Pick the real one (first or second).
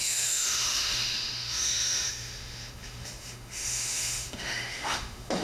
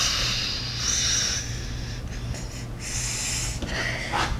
second